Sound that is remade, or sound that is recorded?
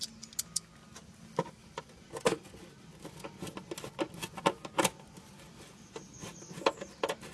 recorded